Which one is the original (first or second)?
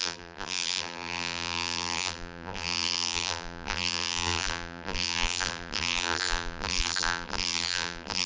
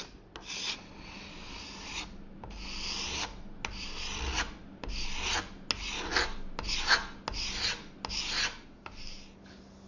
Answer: second